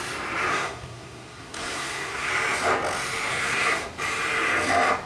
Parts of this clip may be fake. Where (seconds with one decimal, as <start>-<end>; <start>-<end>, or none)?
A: 0.5-2.3; 3.3-3.9